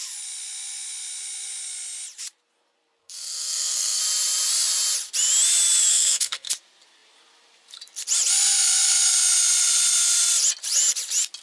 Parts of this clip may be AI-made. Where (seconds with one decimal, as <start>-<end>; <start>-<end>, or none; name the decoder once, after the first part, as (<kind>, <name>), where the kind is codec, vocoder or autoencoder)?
3.0-4.0 (codec, SNAC); 5.9-6.5